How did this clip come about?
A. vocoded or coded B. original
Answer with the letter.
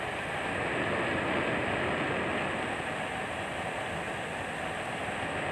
B